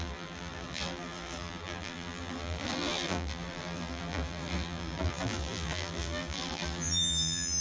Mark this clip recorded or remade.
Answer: remade